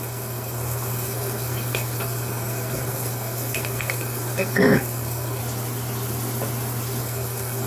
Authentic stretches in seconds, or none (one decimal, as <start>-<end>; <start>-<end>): 5.4-7.0